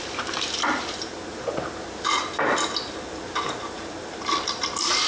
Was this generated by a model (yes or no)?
no